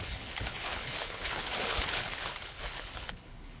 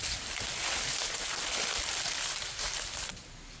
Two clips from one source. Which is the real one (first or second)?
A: second